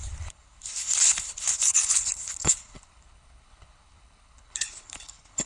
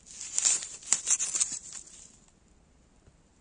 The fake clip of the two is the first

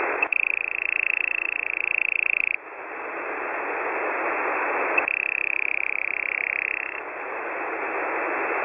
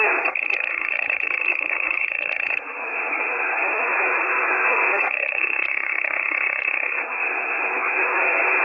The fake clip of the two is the second